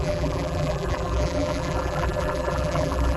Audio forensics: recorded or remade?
remade